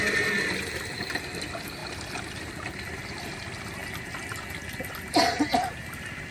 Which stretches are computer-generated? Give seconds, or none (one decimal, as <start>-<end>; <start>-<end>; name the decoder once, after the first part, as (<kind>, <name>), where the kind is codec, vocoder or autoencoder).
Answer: 1.8-2.5 (vocoder, BigVGAN v2)